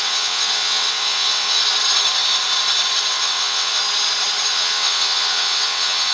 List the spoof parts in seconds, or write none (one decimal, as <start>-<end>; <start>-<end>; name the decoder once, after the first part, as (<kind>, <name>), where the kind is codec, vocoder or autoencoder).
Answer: 0.0-1.6 (vocoder, WaveNeXt); 3.1-3.8; 4.5-6.1